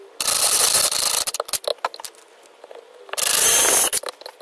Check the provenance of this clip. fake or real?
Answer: real